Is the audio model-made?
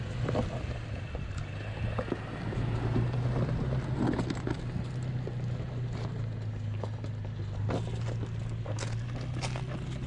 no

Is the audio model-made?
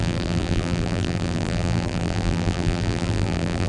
yes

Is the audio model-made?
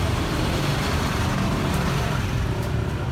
yes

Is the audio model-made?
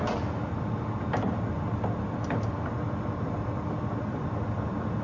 yes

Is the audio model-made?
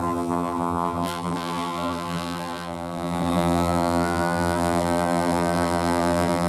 yes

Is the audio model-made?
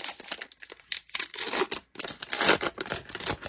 yes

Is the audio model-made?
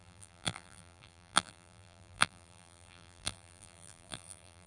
yes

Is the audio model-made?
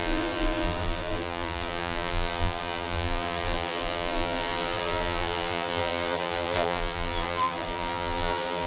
yes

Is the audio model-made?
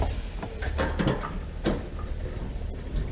yes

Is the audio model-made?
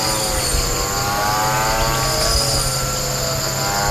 no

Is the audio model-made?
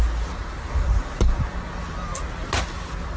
no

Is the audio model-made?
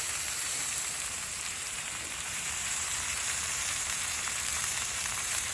yes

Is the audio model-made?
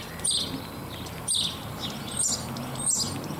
no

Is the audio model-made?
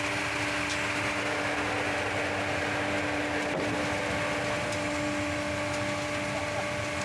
yes